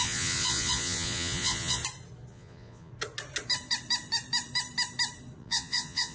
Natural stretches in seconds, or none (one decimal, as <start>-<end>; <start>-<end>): 1.8-2.3; 2.9-5.4